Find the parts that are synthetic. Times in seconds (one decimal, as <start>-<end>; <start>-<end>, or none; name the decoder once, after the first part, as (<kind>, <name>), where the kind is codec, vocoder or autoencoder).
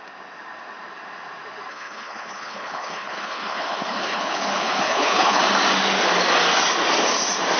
1.7-5.4 (codec, HILCodec)